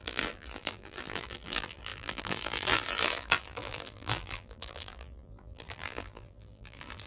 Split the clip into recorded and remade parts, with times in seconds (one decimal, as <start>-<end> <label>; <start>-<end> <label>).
0.0-7.1 remade